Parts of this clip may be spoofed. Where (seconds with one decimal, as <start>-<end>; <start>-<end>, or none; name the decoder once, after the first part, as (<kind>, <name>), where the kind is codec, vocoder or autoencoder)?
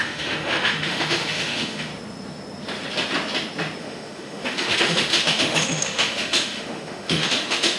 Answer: 0.0-1.9 (autoencoder, DAC-VAE); 3.8-7.8